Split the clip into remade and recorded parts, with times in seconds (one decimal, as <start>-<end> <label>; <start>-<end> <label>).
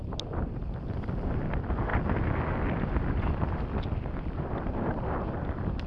0.0-5.9 recorded